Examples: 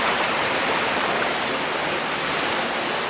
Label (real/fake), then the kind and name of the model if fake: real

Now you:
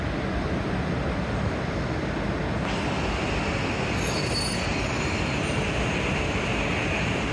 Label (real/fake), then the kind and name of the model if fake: real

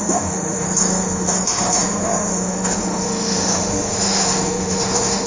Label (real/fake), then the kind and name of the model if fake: fake, autoencoder, DAC-VAE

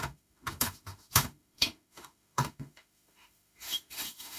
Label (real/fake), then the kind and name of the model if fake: fake, autoencoder, DAC-VAE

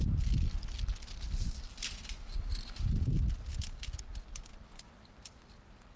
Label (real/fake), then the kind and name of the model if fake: real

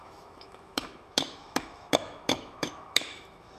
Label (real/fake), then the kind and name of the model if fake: fake, autoencoder, DAC-VAE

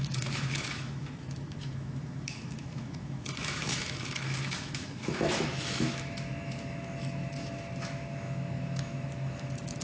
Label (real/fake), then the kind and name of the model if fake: fake, autoencoder, DAC-VAE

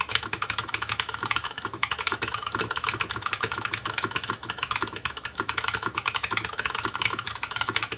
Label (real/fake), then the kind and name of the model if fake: fake, autoencoder, DAC-VAE